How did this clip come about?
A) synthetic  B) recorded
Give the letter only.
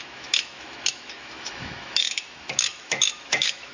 A